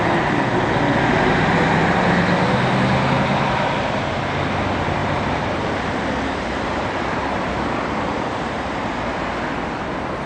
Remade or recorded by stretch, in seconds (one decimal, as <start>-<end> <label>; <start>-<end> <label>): 0.0-5.0 recorded; 5.0-8.8 remade; 8.8-10.3 recorded